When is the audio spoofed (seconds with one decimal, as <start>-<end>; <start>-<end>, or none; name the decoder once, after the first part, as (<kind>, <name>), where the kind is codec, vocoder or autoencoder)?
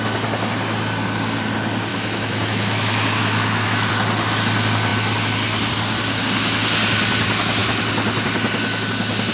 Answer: 1.9-3.9 (autoencoder, DAC-VAE)